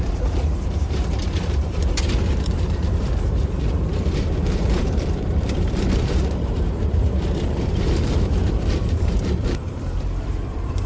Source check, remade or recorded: remade